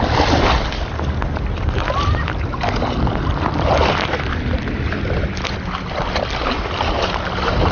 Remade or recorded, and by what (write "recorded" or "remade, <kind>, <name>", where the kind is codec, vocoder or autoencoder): recorded